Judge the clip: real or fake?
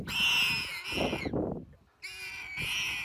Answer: real